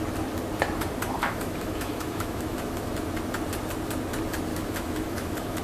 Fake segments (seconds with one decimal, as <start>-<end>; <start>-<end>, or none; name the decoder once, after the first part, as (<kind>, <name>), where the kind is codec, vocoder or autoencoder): 1.2-2.9 (autoencoder, DAC-VAE); 4.5-5.6